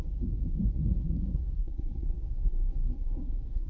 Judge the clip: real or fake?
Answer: fake